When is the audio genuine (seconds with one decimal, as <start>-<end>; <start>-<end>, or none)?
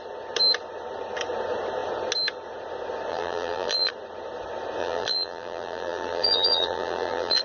0.0-3.1; 3.9-4.8